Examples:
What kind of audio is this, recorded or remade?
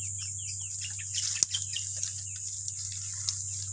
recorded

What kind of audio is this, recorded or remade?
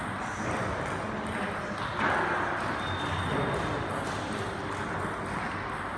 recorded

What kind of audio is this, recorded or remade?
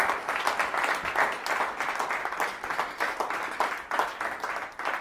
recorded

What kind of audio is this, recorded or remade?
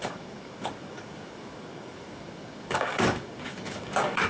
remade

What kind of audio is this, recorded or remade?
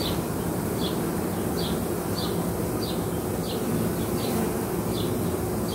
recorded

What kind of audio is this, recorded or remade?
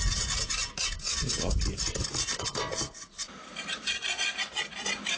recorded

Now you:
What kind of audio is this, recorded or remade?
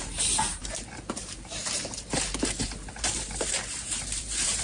remade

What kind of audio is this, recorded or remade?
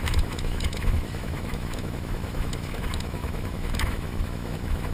remade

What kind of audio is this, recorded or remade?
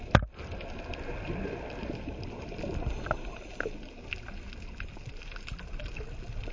recorded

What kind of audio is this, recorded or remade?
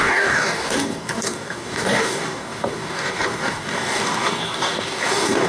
remade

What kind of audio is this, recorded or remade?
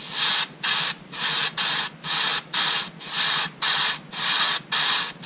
recorded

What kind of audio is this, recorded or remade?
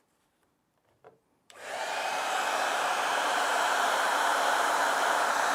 remade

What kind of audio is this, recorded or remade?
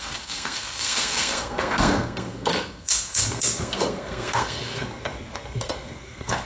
remade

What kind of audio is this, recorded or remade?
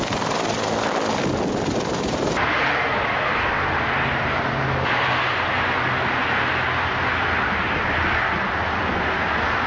recorded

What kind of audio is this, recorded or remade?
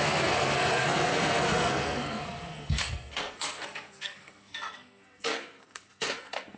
remade